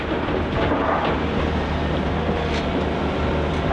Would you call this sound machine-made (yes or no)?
no